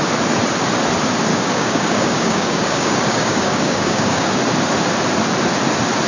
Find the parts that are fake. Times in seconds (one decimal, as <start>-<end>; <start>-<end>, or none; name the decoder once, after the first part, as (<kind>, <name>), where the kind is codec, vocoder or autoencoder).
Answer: 1.3-4.4 (codec, DAC)